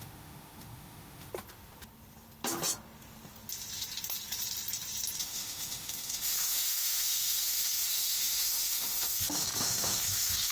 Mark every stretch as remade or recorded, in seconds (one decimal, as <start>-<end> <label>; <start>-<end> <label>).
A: 0.0-1.3 remade; 1.3-5.2 recorded; 5.2-10.5 remade